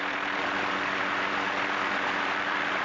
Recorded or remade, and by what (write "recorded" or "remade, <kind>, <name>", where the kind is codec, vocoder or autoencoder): remade, vocoder, BigVGAN v2